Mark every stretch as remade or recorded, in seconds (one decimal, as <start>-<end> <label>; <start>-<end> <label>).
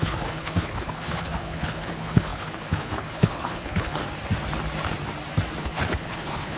0.0-4.0 remade; 4.0-5.6 recorded; 5.6-6.6 remade